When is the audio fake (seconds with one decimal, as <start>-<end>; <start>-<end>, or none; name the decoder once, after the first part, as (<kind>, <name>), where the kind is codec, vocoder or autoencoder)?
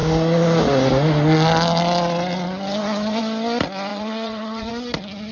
3.9-4.7 (vocoder, Vocos)